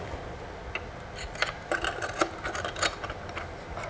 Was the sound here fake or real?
real